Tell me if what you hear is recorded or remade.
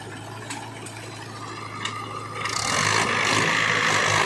recorded